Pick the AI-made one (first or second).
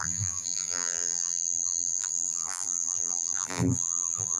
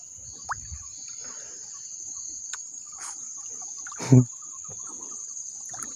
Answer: first